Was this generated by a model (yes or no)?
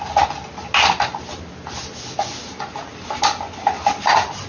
no